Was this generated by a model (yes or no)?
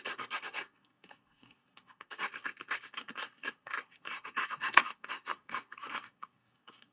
yes